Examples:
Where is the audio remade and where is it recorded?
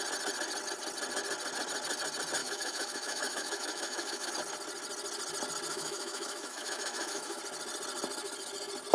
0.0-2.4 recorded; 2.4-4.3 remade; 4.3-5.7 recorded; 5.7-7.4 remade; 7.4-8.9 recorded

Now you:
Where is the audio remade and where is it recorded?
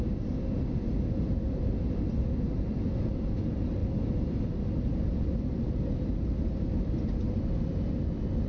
0.0-8.5 recorded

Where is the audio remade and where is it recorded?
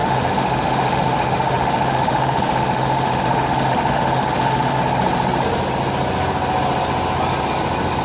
0.0-4.8 remade; 4.8-8.0 recorded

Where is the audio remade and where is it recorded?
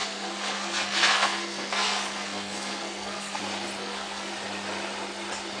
0.0-3.4 remade; 3.4-3.8 recorded; 3.8-4.3 remade; 4.3-5.6 recorded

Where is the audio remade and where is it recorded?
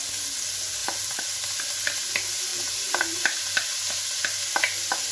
0.0-2.5 recorded; 2.5-3.5 remade; 3.5-5.1 recorded